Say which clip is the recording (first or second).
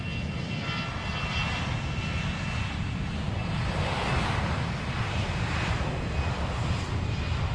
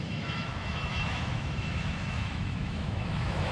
first